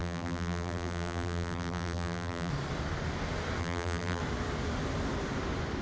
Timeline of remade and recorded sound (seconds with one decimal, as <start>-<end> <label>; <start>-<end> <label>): 0.0-2.5 remade; 2.5-3.6 recorded; 3.6-4.2 remade; 4.2-5.8 recorded